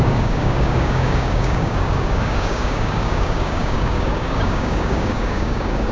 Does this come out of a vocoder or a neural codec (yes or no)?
yes